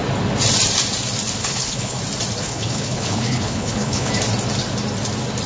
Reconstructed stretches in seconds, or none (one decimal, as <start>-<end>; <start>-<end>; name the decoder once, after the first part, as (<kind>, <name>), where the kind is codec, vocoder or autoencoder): 1.4-2.0 (codec, HILCodec); 2.4-4.1